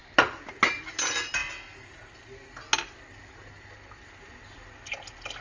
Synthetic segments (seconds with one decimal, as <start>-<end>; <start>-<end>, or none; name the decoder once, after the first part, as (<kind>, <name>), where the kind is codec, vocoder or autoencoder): none